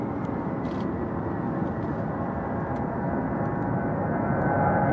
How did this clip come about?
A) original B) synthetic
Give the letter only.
A